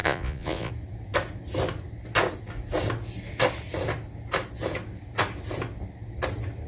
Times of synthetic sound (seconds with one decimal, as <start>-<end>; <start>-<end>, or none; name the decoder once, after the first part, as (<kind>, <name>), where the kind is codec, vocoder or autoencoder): 0.0-0.7 (vocoder, Vocos)